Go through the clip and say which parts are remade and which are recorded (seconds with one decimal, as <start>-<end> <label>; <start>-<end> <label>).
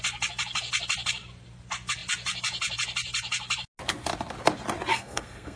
0.0-4.9 recorded; 4.9-5.6 remade